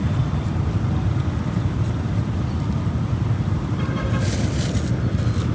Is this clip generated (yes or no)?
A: no